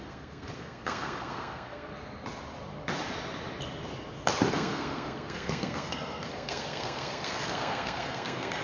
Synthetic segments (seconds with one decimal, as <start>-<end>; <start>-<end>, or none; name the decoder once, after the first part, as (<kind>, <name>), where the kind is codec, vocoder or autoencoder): 0.0-1.9 (codec, SNAC); 4.5-8.6